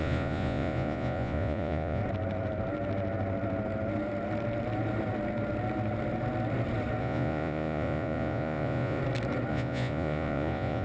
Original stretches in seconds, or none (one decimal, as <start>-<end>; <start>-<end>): 2.0-7.0; 9.0-9.5